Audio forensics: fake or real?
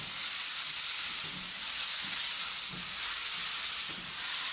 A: real